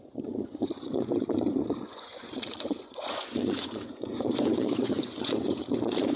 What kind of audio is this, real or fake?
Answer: fake